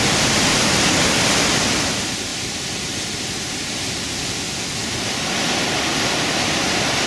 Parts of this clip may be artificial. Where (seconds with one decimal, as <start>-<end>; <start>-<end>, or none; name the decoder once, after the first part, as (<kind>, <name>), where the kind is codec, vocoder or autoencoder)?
2.3-3.2 (vocoder, BigVGAN v2)